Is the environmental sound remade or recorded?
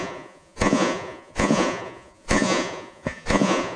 remade